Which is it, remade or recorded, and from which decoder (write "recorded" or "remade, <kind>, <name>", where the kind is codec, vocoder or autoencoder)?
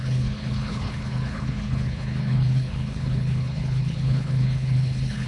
remade, codec, HILCodec